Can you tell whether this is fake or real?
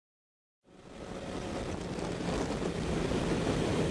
real